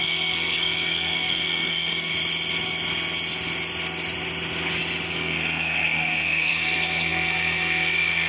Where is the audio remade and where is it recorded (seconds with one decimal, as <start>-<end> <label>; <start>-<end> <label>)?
0.0-2.1 remade; 2.1-5.1 recorded; 5.1-8.3 remade